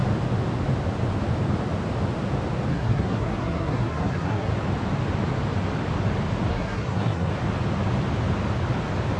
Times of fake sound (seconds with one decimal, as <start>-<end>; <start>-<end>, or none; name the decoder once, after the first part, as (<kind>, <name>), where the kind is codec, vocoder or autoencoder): 2.7-4.5 (codec, SNAC); 6.5-7.3